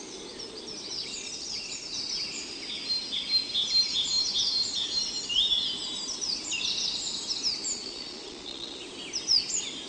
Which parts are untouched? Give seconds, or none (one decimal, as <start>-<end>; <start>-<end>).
0.0-7.7; 8.8-9.9